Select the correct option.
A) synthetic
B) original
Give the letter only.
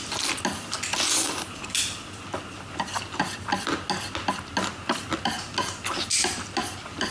B